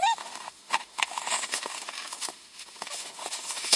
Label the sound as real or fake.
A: fake